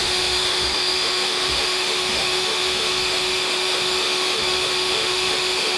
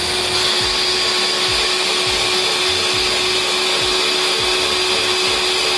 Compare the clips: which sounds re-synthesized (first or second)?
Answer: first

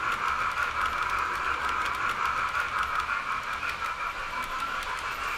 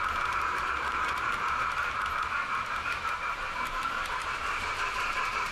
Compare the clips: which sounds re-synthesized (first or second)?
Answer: second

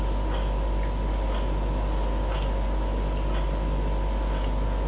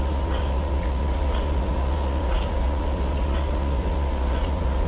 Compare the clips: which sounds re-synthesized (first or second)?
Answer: second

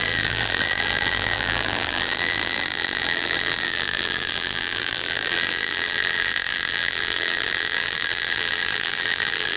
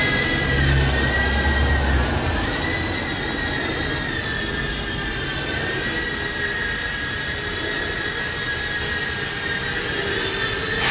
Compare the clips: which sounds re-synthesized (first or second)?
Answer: first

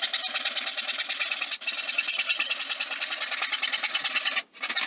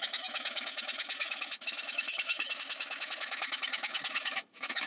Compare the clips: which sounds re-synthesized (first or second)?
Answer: second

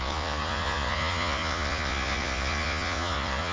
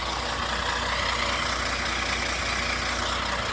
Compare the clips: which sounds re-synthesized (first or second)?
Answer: first